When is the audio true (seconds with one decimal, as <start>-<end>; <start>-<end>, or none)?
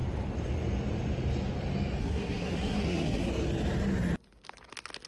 0.0-2.0; 3.3-5.1